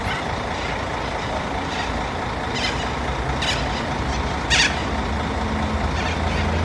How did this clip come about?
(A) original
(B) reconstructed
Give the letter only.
A